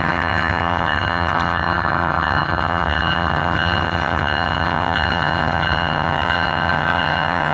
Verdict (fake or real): fake